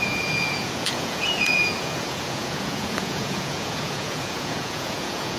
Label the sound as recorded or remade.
remade